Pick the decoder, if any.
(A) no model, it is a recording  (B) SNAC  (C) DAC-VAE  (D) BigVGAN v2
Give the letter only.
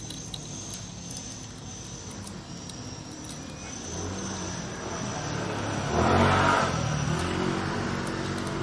A